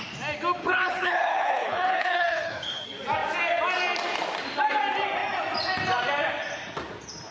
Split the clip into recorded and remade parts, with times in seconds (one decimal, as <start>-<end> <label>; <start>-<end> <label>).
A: 0.0-0.6 recorded; 0.6-2.8 remade; 2.8-7.3 recorded